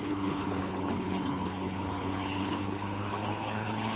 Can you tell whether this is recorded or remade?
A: remade